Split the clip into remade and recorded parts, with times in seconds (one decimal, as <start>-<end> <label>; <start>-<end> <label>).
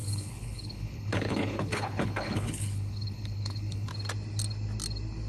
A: 0.0-3.9 remade; 3.9-5.3 recorded